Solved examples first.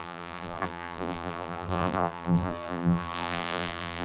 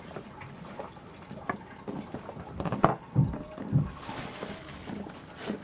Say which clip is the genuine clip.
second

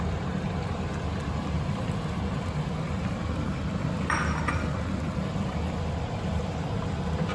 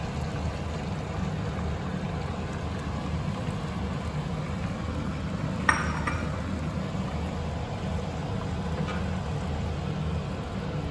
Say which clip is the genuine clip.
second